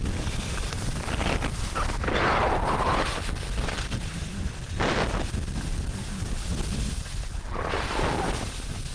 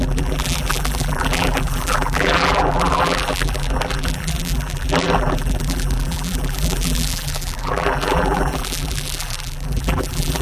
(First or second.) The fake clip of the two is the second